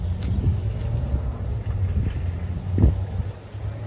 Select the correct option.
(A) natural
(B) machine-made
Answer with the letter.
A